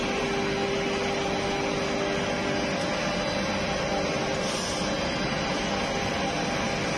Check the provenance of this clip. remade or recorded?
recorded